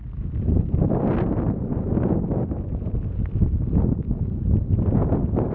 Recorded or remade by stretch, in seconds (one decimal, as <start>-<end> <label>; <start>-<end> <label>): 0.0-5.5 recorded